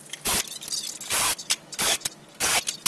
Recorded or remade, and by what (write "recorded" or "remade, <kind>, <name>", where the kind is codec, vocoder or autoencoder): recorded